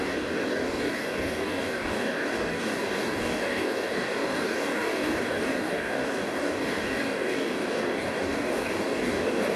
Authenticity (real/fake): fake